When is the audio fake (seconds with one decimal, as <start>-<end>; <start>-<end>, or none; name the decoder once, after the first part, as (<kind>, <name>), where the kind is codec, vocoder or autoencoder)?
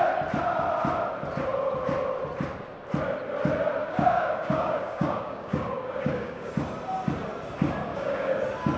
3.8-6.5 (codec, DAC); 7.9-8.4